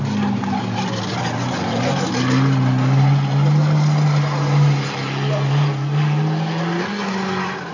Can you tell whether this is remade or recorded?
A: recorded